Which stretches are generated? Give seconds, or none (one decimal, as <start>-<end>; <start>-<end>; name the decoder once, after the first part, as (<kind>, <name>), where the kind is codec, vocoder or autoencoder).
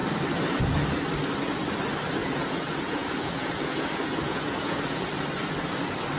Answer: 2.2-5.1 (vocoder, Vocos)